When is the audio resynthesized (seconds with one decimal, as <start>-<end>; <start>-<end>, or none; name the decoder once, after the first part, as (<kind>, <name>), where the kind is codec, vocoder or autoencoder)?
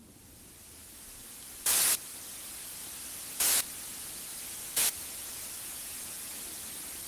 4.3-6.4 (vocoder, Vocos)